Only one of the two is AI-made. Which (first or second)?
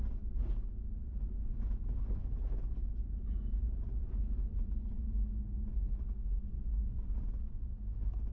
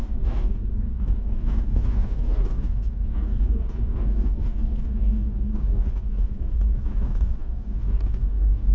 second